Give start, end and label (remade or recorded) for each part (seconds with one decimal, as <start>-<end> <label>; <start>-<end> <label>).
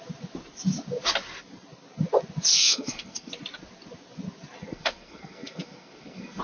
0.0-2.5 recorded; 2.5-3.3 remade; 3.3-4.7 recorded; 4.7-6.4 remade